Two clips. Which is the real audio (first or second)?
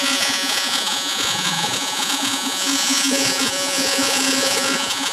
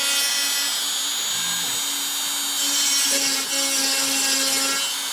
second